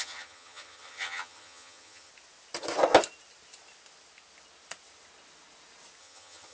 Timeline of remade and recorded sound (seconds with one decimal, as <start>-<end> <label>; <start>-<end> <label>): 0.0-2.1 remade; 2.1-6.0 recorded; 6.0-6.5 remade